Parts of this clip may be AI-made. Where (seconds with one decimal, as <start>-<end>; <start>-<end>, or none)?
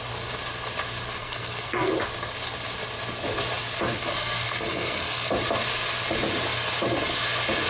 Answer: 1.2-1.9; 4.1-5.3